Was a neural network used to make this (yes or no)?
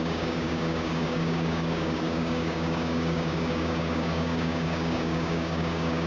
yes